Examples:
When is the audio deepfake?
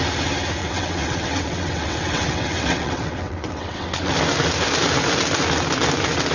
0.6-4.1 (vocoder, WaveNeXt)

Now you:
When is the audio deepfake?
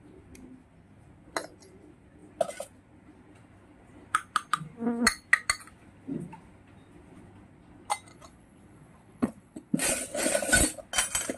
8.1-9.9 (vocoder, Vocos)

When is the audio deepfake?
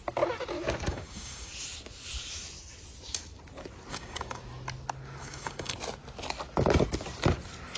0.9-1.5 (codec, DAC); 3.9-4.4; 5.2-5.8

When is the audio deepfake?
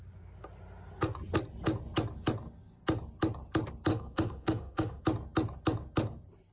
3.9-5.0 (autoencoder, DAC-VAE)